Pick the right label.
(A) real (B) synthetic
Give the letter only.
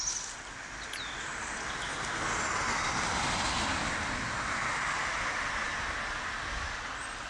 A